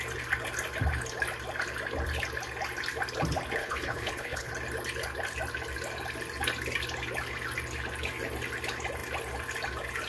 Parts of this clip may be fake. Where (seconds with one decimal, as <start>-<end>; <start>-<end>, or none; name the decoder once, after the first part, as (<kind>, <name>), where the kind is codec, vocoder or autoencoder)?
3.6-4.5 (codec, HILCodec)

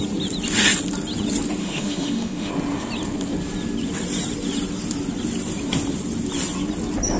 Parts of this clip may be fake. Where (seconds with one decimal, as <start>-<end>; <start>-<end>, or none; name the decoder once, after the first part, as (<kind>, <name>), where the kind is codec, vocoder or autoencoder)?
1.6-2.5 (autoencoder, DAC-VAE)